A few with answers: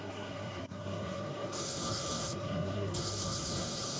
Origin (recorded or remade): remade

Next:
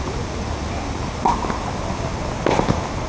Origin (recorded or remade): recorded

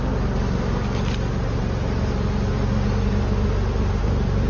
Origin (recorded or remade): recorded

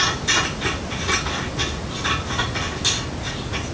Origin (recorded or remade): recorded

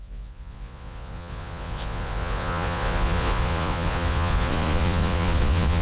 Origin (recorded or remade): remade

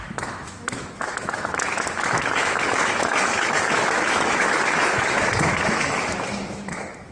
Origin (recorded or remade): remade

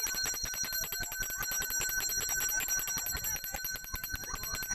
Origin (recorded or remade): recorded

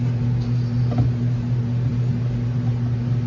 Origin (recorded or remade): recorded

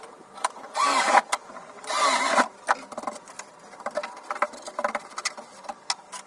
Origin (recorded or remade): recorded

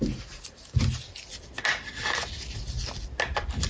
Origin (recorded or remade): recorded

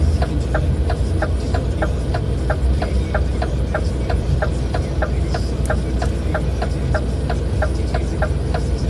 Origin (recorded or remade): recorded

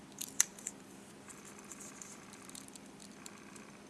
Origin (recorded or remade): remade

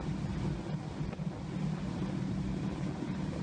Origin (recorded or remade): recorded